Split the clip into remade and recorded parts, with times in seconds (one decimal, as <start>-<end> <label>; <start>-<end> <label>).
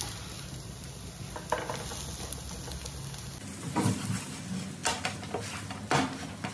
0.0-6.5 recorded